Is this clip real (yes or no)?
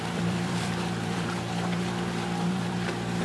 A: no